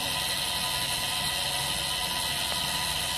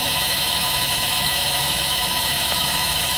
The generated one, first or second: second